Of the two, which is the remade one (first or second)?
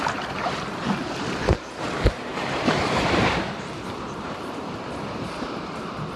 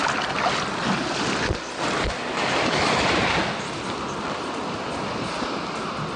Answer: first